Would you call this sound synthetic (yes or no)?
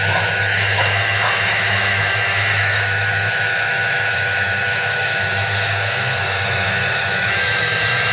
yes